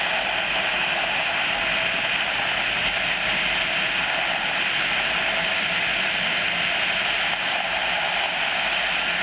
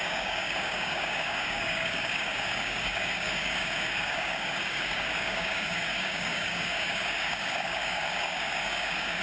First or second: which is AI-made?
second